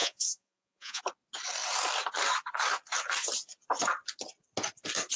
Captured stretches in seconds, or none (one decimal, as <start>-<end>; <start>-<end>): 1.0-5.2